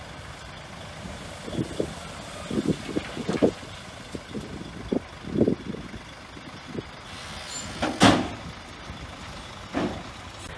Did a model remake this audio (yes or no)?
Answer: no